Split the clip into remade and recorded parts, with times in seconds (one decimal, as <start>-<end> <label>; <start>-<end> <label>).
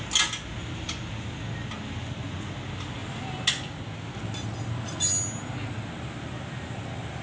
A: 0.0-0.6 recorded; 0.6-1.1 remade; 1.1-7.2 recorded